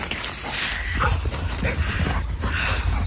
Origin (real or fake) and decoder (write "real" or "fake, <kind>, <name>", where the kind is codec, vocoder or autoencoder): real